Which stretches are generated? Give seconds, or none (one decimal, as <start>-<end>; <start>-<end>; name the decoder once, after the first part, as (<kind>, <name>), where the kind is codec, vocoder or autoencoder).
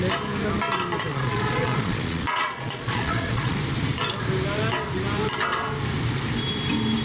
1.1-3.6 (vocoder, Vocos)